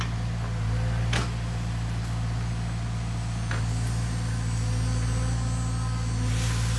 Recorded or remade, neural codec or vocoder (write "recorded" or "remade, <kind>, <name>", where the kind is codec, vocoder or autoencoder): recorded